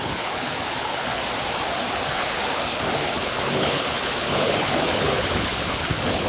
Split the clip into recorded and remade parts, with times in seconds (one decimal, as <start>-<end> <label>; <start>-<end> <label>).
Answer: 0.0-1.2 remade; 1.2-1.9 recorded; 1.9-6.3 remade